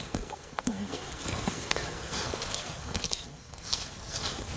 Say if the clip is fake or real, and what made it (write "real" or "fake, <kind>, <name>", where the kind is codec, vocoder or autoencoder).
fake, codec, SNAC